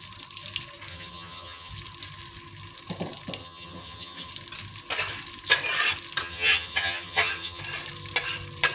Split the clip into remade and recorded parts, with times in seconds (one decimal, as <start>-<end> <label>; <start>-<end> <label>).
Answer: 0.0-0.9 recorded; 0.9-1.7 remade; 1.7-3.4 recorded; 3.4-4.3 remade; 4.3-6.2 recorded; 6.2-7.6 remade; 7.6-8.7 recorded